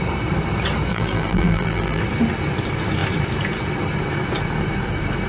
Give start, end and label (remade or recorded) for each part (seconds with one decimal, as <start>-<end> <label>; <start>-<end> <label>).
0.0-0.9 recorded; 0.9-2.0 remade; 2.0-5.3 recorded

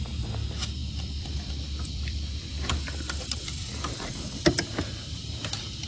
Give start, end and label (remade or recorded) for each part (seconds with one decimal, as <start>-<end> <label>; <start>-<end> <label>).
0.0-0.8 recorded; 0.8-4.1 remade; 4.1-5.9 recorded

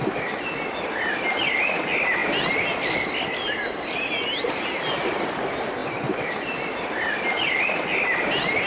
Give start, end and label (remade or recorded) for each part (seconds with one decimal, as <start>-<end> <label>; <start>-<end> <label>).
0.0-5.8 recorded; 5.8-6.8 remade; 6.8-8.7 recorded

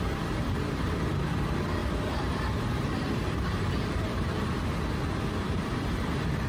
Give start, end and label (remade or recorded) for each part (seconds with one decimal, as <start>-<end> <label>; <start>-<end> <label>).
0.0-4.6 remade; 4.6-5.4 recorded; 5.4-6.5 remade

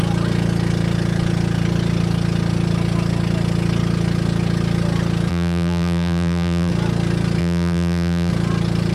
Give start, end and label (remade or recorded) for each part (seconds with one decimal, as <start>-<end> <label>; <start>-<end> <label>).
0.0-5.3 recorded; 5.3-6.7 remade; 6.7-7.4 recorded; 7.4-8.3 remade; 8.3-8.9 recorded

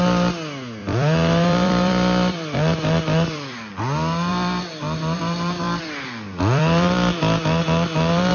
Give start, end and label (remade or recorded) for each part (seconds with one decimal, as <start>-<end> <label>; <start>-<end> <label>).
0.0-0.8 recorded; 0.8-3.8 remade; 3.8-4.3 recorded; 4.3-8.3 remade

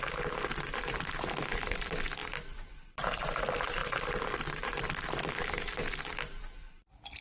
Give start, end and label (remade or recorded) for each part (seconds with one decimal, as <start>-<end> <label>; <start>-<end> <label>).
0.0-5.8 remade; 5.8-6.8 recorded; 6.8-7.2 remade